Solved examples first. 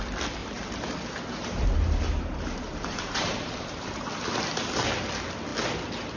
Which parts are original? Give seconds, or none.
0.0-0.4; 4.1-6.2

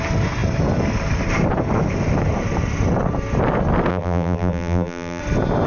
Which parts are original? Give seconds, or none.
0.0-3.9; 5.2-5.7

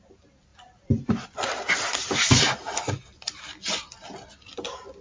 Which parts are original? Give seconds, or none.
0.0-0.5; 3.5-4.0

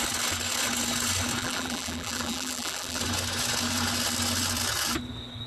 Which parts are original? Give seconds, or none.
0.0-1.4; 3.0-5.5

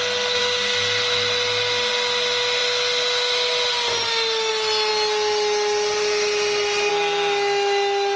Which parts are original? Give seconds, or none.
0.0-8.2

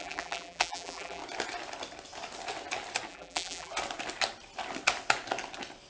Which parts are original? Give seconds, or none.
1.2-3.1; 3.7-5.9